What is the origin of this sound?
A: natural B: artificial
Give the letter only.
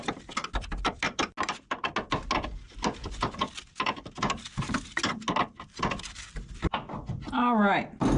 A